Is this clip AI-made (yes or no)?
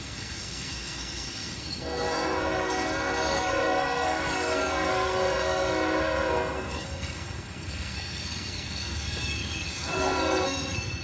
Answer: yes